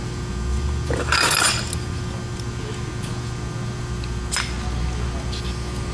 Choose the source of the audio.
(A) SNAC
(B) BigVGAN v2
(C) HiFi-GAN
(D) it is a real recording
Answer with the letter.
D